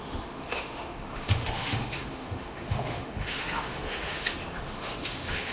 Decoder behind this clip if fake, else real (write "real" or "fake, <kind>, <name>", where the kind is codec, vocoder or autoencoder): fake, autoencoder, DAC-VAE